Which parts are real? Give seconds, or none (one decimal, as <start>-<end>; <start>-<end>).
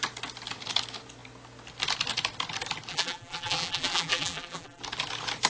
0.0-2.9; 4.8-5.5